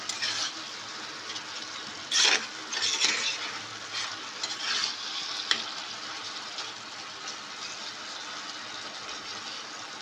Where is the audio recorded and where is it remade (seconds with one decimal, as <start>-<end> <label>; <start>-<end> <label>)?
0.0-10.0 recorded

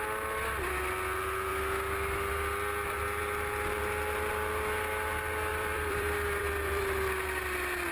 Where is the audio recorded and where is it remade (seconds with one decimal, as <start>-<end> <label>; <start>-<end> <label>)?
0.0-5.5 recorded; 5.5-6.8 remade; 6.8-7.9 recorded

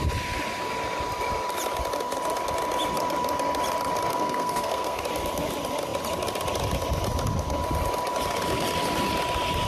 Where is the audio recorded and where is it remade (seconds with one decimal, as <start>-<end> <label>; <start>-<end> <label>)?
0.0-4.1 recorded; 4.1-5.0 remade; 5.0-9.7 recorded